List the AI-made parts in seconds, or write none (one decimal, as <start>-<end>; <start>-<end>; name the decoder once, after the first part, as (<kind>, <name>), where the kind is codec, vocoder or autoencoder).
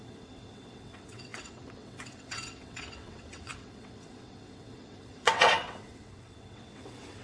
0.0-7.2 (vocoder, WaveNeXt)